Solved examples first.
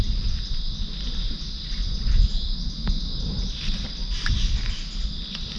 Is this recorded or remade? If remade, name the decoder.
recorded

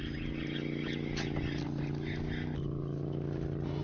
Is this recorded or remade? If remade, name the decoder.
recorded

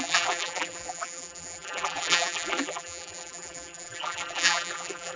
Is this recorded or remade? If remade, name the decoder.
remade, vocoder, BigVGAN v2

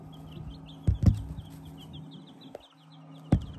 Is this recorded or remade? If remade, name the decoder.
recorded